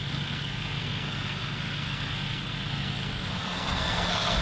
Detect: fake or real fake